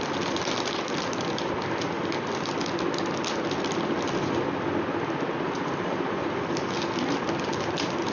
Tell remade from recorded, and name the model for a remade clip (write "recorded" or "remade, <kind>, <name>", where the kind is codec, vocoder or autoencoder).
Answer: recorded